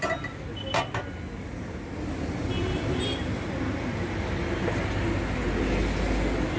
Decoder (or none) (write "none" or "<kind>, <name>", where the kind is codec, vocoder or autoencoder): none